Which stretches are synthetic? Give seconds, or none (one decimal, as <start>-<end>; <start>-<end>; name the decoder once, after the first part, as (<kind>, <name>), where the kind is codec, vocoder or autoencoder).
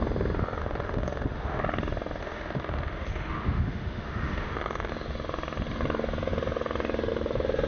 0.6-1.6 (autoencoder, DAC-VAE); 2.2-4.9